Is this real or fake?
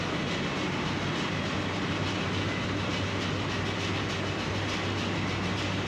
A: real